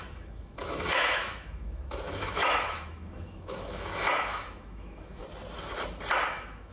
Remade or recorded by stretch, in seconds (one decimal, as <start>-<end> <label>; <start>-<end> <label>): 0.0-5.2 remade; 5.2-6.3 recorded; 6.3-6.7 remade

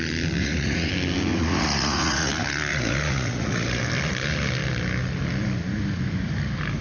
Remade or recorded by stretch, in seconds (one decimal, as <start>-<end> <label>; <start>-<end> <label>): 0.0-0.4 recorded; 0.4-0.9 remade; 0.9-1.3 recorded; 1.3-2.3 remade; 2.3-2.7 recorded; 2.7-3.8 remade; 3.8-6.8 recorded